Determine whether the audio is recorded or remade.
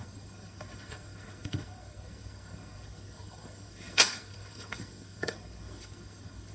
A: remade